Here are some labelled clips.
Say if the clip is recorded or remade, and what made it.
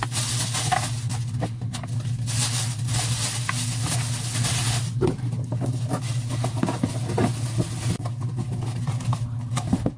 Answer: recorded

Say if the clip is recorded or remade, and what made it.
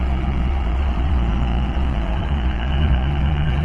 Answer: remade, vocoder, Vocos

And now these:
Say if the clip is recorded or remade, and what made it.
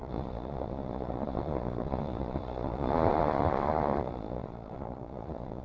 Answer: remade, vocoder, Vocos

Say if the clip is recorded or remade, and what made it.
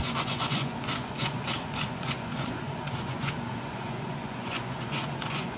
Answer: remade, vocoder, Vocos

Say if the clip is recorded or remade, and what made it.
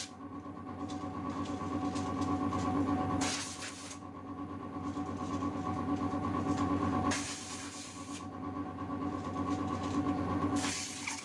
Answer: recorded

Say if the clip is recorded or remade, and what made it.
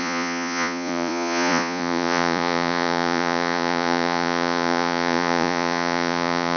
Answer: remade, vocoder, Vocos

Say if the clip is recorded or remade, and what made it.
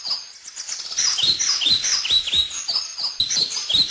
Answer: recorded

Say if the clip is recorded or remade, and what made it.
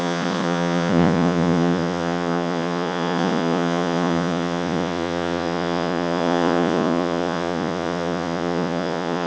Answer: remade, vocoder, Vocos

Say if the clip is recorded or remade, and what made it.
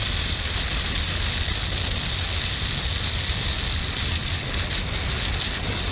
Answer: recorded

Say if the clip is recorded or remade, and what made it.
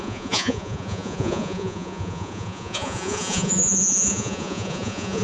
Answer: remade, vocoder, Vocos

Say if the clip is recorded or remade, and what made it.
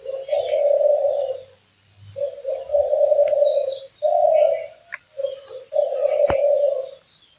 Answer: recorded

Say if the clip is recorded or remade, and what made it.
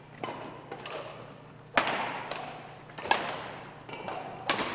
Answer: recorded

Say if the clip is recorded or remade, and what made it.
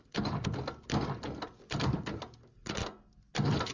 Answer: recorded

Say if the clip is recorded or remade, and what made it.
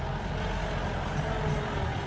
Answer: recorded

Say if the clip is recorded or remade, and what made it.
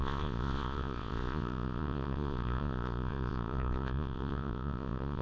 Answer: remade, vocoder, Vocos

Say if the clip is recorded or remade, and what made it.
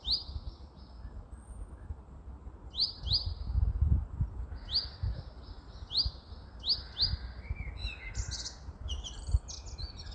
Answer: recorded